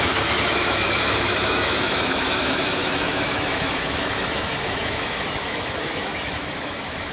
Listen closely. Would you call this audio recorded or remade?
remade